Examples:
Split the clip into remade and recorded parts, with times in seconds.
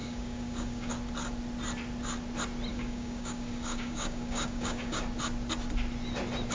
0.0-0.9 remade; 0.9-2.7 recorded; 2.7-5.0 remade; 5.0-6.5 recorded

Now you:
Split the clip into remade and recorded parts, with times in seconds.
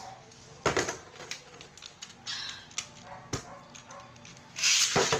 0.0-4.3 recorded; 4.3-4.8 remade; 4.8-5.2 recorded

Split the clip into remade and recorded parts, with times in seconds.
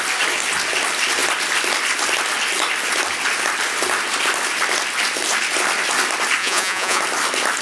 0.0-6.4 recorded; 6.4-7.0 remade; 7.0-7.6 recorded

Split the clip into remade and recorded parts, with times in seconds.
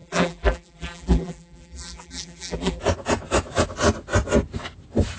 0.0-2.8 remade; 2.8-5.2 recorded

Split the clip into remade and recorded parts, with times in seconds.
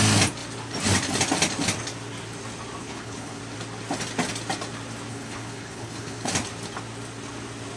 0.0-2.8 recorded; 2.8-3.4 remade; 3.4-5.1 recorded; 5.1-6.3 remade; 6.3-7.8 recorded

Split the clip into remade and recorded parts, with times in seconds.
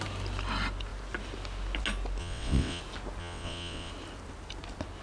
0.0-2.2 recorded; 2.2-2.8 remade; 2.8-3.2 recorded; 3.2-3.9 remade; 3.9-5.0 recorded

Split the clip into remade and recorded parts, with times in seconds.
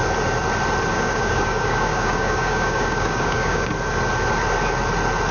0.0-0.9 recorded; 0.9-3.7 remade; 3.7-5.3 recorded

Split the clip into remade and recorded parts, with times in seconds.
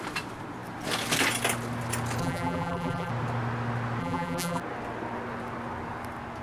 0.0-2.2 recorded; 2.2-3.1 remade; 3.1-4.0 recorded; 4.0-4.6 remade; 4.6-6.4 recorded